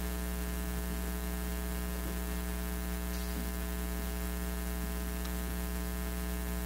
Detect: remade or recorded recorded